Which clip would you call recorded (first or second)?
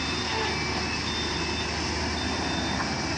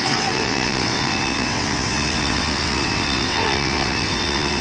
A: first